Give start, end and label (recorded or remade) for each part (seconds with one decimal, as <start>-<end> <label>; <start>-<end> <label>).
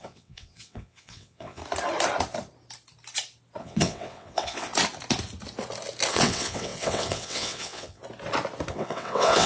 0.0-1.6 remade; 1.6-3.6 recorded; 3.6-4.7 remade; 4.7-6.1 recorded; 6.1-8.0 remade; 8.0-8.7 recorded; 8.7-9.5 remade